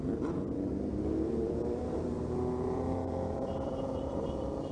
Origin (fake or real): fake